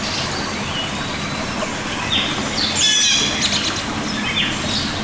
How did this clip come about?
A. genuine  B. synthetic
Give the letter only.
A